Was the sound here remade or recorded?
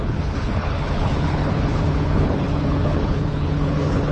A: remade